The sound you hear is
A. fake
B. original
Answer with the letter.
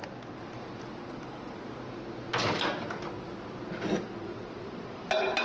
B